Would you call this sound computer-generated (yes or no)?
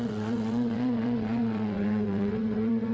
yes